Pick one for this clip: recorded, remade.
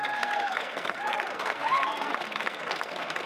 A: remade